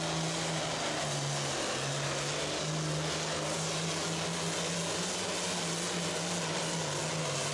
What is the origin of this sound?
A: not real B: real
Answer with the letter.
B